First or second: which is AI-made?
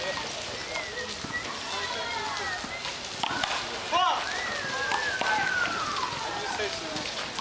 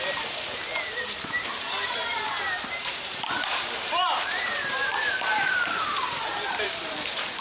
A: second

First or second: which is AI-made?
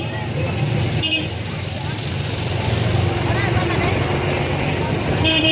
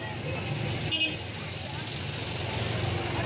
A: first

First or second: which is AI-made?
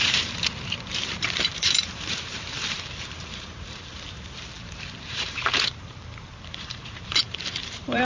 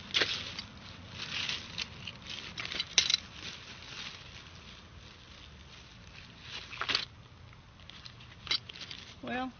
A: first